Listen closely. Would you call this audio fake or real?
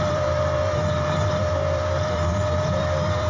fake